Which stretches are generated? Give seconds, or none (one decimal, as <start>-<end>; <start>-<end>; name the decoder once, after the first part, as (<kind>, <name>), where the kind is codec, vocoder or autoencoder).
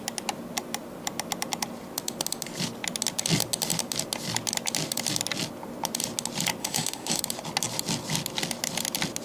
6.6-7.2 (autoencoder, DAC-VAE)